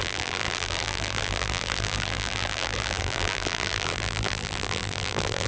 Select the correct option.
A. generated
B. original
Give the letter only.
A